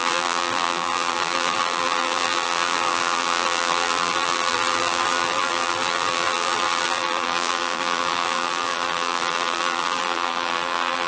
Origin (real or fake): fake